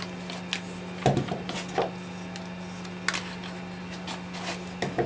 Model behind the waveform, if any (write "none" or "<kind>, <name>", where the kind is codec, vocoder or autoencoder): none